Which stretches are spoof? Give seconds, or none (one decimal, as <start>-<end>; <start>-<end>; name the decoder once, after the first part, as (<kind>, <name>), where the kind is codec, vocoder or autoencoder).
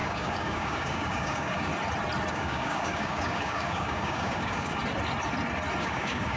0.0-1.7 (codec, DAC); 2.3-4.8; 5.8-6.4